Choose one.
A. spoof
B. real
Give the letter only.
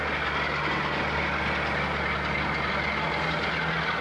B